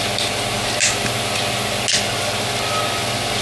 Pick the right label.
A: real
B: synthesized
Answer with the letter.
A